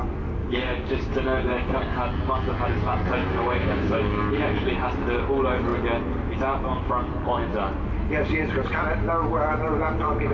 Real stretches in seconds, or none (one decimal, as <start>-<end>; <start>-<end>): 0.0-0.4; 1.8-3.2; 4.2-10.3